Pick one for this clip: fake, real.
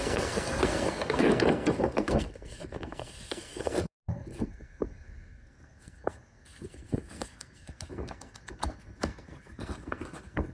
fake